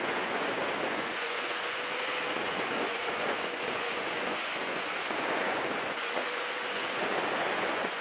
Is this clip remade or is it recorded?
remade